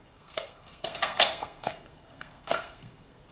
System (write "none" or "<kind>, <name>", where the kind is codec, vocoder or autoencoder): codec, SNAC